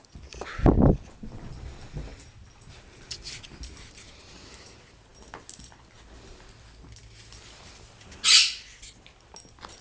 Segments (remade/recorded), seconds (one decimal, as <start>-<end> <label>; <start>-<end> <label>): 0.0-9.8 recorded